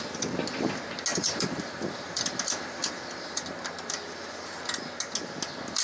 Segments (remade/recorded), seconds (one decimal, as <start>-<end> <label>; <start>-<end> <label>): 0.0-1.1 recorded; 1.1-4.6 remade; 4.6-5.8 recorded